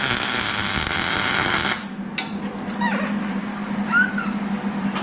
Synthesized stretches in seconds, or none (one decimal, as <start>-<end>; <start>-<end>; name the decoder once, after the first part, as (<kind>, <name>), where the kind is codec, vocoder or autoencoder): none